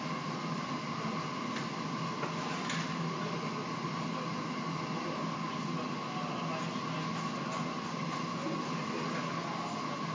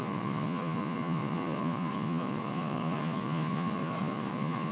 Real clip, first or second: first